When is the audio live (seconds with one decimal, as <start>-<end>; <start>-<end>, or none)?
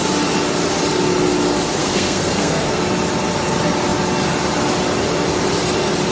0.0-1.8; 2.8-6.1